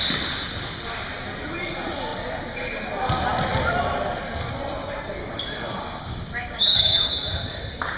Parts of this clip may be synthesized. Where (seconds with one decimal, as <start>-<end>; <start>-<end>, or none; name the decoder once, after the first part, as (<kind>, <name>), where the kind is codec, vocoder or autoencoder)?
5.2-7.1 (codec, DAC)